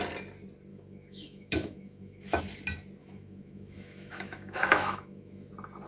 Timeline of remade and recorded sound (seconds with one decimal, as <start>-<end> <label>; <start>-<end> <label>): 0.0-0.7 recorded; 0.7-2.4 remade; 2.4-3.0 recorded; 3.0-5.5 remade; 5.5-5.9 recorded